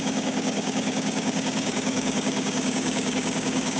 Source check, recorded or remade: remade